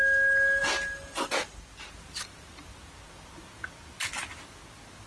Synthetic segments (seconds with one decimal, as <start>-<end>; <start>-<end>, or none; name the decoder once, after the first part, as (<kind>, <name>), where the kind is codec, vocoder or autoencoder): none